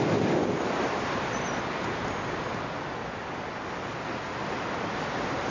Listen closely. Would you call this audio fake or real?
real